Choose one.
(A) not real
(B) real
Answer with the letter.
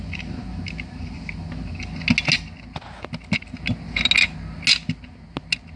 B